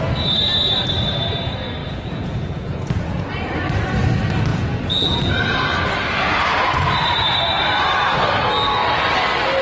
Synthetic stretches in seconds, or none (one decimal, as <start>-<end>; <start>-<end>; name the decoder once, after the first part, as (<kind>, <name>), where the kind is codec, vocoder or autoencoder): 1.8-3.3 (vocoder, Vocos); 4.5-5.3